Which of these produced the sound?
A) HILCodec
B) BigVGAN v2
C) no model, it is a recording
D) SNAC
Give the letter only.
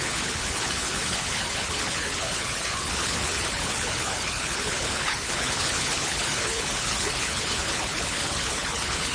A